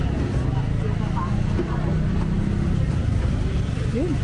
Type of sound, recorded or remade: recorded